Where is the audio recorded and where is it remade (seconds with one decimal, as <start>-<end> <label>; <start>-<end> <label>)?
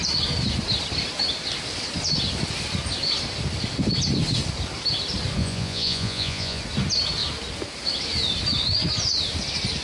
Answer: 0.0-5.4 recorded; 5.4-6.6 remade; 6.6-9.8 recorded